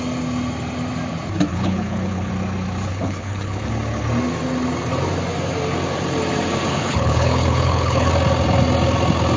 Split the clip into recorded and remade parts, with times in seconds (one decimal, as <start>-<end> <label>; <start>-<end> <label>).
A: 0.0-1.5 recorded; 1.5-2.3 remade; 2.3-2.9 recorded; 2.9-3.7 remade; 3.7-6.7 recorded; 6.7-8.1 remade; 8.1-9.4 recorded